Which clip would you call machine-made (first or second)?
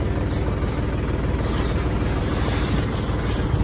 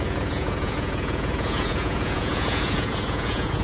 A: second